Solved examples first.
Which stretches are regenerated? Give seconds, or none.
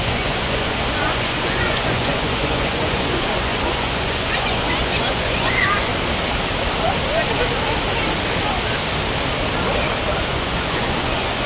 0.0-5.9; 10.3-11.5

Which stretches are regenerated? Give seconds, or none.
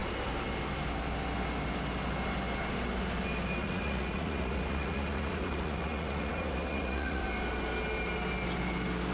3.6-7.2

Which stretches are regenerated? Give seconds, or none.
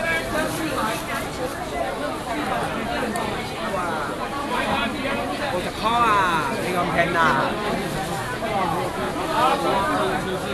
3.8-4.8; 8.2-9.1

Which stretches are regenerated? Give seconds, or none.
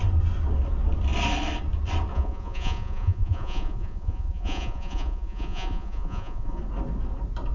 2.1-6.6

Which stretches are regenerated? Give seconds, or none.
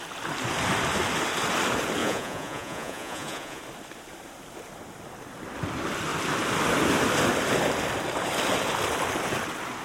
2.0-3.6